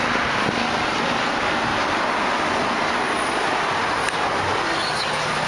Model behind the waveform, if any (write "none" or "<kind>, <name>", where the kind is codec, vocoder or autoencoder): none